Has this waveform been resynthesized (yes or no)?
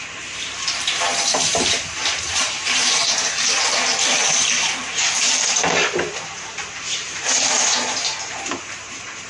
yes